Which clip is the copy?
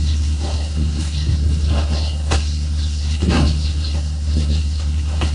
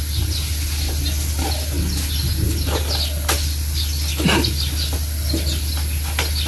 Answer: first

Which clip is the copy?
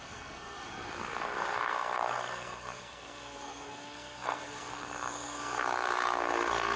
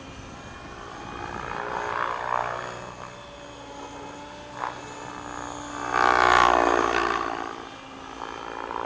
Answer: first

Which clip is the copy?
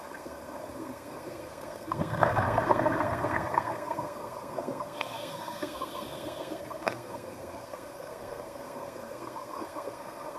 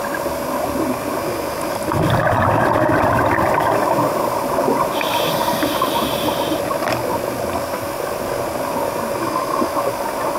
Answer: first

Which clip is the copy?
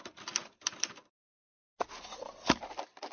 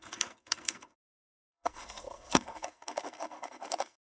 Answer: second